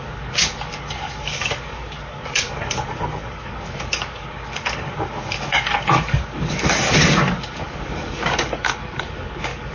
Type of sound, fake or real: fake